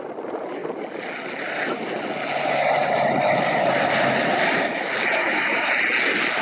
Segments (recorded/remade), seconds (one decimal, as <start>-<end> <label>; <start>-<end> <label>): 0.0-5.2 recorded; 5.2-5.7 remade; 5.7-6.4 recorded